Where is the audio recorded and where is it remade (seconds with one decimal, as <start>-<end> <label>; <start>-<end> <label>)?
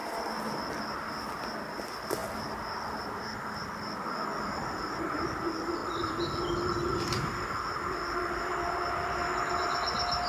0.0-2.2 remade; 2.2-4.8 recorded; 4.8-5.8 remade; 5.8-10.3 recorded